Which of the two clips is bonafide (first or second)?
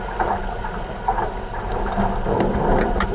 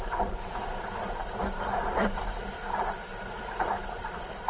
first